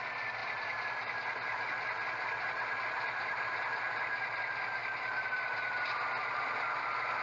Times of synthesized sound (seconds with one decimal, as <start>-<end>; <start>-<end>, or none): none